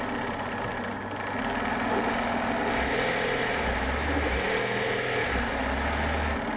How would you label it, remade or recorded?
recorded